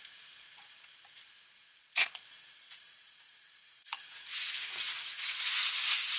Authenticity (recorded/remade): remade